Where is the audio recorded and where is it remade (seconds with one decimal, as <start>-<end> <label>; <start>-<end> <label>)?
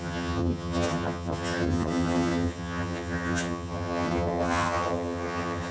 0.0-5.7 remade